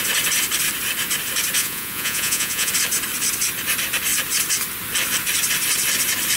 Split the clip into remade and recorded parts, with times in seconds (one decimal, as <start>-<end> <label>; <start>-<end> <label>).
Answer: 0.0-1.6 recorded; 1.6-2.7 remade; 2.7-6.4 recorded